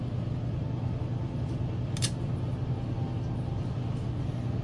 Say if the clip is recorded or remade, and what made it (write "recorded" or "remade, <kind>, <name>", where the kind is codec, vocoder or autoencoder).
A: recorded